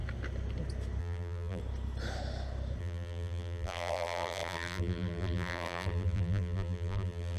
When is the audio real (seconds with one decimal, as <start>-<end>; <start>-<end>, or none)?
0.0-1.0; 1.6-2.8